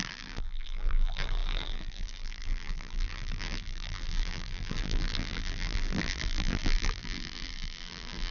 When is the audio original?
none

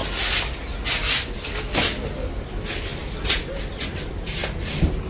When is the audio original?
0.0-5.1

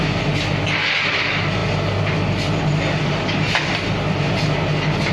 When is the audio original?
0.0-5.1

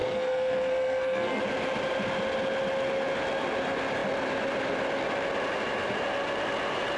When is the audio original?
1.4-7.0

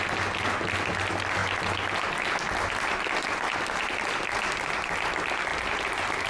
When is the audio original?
0.0-6.3

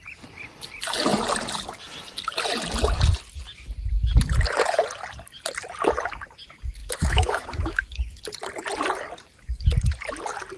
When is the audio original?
0.0-6.8; 8.2-10.6

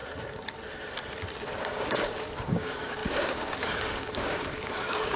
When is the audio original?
0.0-1.6

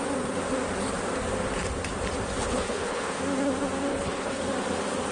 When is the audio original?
0.0-2.4; 3.2-3.9; 4.4-5.1